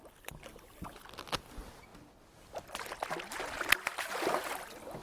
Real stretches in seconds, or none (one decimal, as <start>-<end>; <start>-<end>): 0.0-5.0